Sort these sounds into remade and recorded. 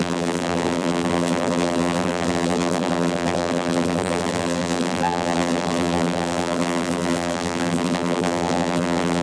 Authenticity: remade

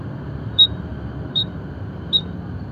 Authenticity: remade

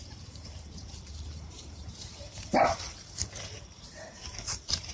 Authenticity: remade